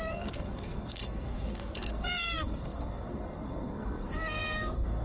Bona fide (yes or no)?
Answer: no